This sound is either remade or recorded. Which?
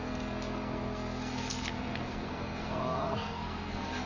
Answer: remade